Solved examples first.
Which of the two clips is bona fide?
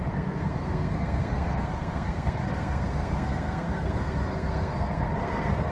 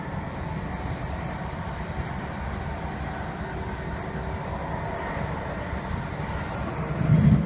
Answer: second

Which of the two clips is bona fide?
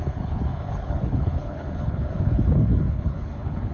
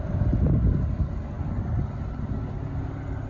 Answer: second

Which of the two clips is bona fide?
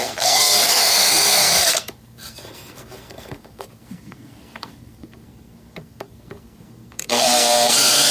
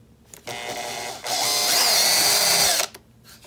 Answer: second